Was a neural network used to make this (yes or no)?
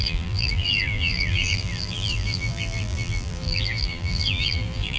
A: yes